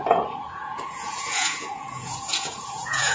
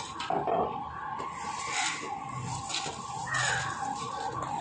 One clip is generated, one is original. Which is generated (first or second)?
first